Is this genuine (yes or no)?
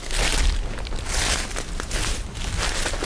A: yes